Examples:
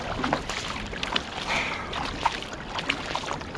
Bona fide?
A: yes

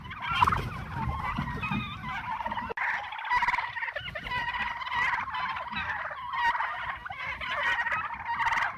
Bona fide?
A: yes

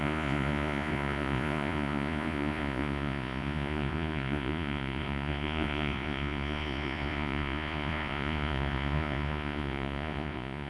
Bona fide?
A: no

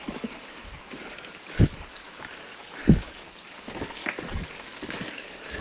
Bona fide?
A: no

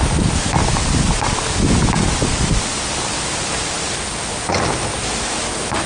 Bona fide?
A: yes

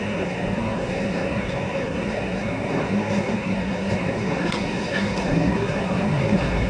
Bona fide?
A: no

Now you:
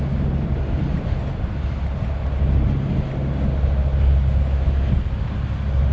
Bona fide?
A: yes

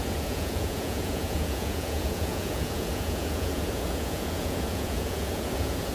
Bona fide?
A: no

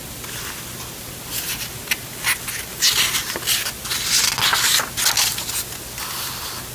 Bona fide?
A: yes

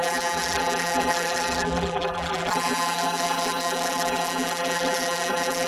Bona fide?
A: no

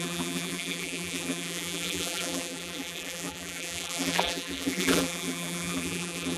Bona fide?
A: no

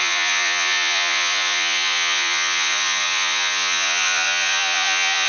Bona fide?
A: no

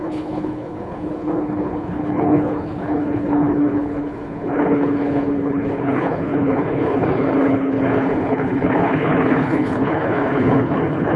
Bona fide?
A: no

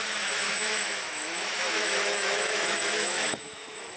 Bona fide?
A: no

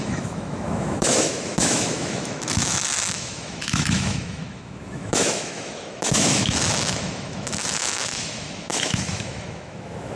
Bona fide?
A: no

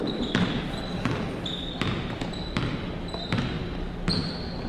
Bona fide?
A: yes